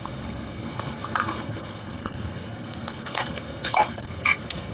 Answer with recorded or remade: remade